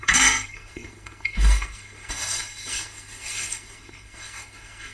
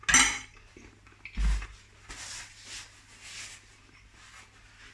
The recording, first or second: second